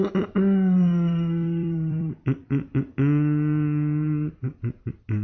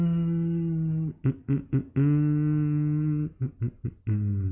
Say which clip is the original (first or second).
second